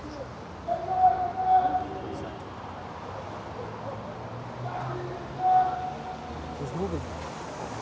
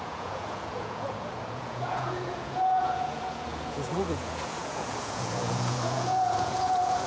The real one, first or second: first